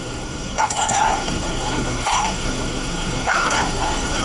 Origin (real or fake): fake